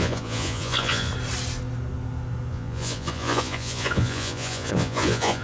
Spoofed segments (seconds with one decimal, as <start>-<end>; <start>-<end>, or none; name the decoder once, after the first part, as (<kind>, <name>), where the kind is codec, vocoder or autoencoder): 0.0-1.1 (vocoder, Vocos); 2.5-5.4